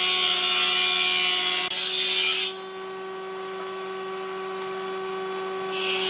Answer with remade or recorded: recorded